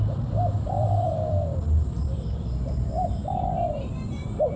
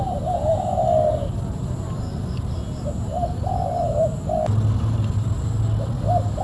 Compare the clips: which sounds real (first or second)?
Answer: second